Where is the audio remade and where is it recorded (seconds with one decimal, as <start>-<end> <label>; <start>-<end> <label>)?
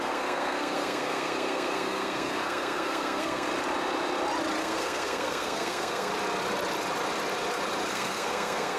0.0-3.5 remade; 3.5-4.6 recorded; 4.6-6.1 remade; 6.1-7.9 recorded; 7.9-8.8 remade